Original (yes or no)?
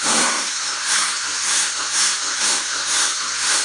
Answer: no